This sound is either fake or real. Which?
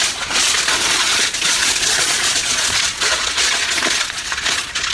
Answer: fake